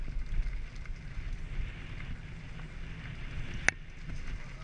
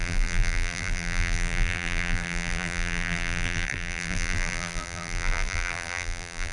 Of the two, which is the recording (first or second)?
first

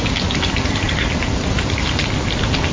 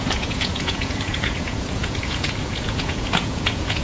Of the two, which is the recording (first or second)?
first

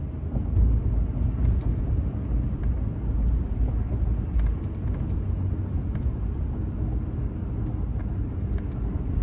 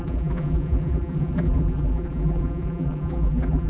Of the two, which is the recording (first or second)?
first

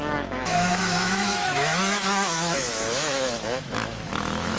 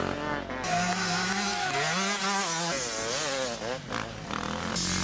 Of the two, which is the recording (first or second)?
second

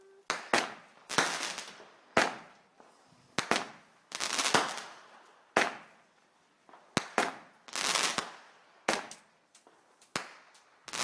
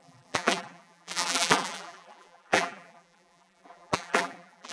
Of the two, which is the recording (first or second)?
first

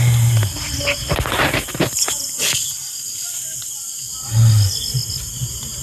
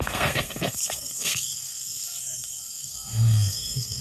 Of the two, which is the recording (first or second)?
first